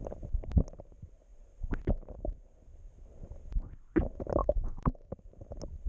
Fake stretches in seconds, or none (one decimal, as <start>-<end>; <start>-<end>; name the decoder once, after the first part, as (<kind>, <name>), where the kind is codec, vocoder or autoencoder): 4.4-5.1 (autoencoder, DAC-VAE)